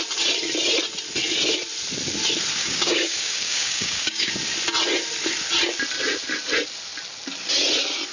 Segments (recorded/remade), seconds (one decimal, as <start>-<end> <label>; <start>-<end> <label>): 0.0-2.6 recorded; 2.6-4.3 remade; 4.3-8.1 recorded